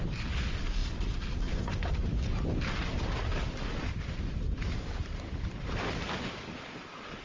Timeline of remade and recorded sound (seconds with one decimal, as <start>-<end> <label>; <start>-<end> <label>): 0.0-7.2 recorded